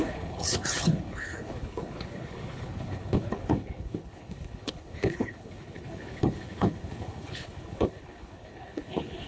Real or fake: fake